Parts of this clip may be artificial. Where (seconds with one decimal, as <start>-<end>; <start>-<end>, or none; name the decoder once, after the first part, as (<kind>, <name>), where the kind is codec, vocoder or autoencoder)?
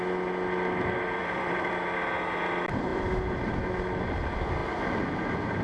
1.2-1.7 (vocoder, BigVGAN v2); 2.9-3.5